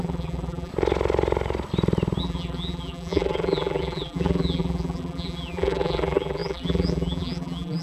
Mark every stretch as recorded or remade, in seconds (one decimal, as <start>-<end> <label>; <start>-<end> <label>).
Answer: 0.0-0.7 remade; 0.7-2.2 recorded; 2.2-7.8 remade